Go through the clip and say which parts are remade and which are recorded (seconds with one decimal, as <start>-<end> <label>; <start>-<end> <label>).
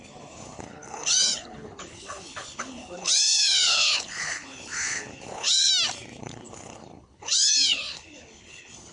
0.0-5.7 remade; 5.7-6.2 recorded; 6.2-8.9 remade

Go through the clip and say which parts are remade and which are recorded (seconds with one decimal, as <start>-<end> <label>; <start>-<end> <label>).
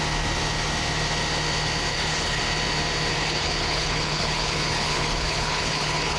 0.0-1.9 recorded; 1.9-2.4 remade; 2.4-3.1 recorded; 3.1-6.2 remade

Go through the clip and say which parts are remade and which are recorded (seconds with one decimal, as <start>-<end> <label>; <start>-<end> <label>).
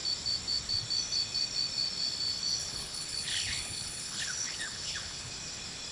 0.0-2.6 recorded; 2.6-5.3 remade; 5.3-5.9 recorded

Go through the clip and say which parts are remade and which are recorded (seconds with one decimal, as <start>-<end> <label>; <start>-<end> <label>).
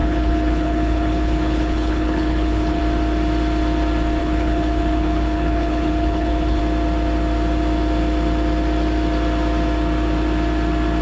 0.0-2.8 remade; 2.8-4.2 recorded; 4.2-6.6 remade; 6.6-11.0 recorded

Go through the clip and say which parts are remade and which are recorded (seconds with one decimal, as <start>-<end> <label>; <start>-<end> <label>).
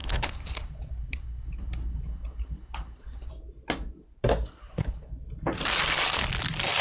0.0-3.3 remade; 3.3-4.5 recorded; 4.5-5.1 remade; 5.1-6.8 recorded